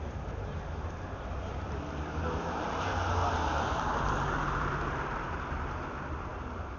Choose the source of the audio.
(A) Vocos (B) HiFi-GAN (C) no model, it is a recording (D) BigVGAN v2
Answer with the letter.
D